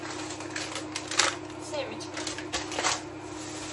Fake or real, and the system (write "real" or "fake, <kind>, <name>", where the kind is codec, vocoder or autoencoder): real